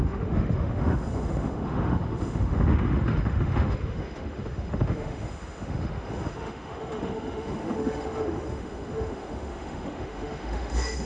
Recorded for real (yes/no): no